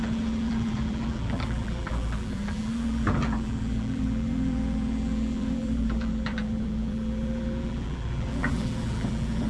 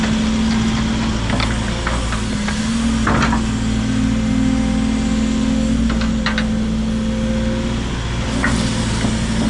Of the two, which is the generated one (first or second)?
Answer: first